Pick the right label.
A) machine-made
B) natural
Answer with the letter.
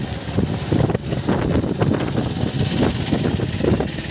B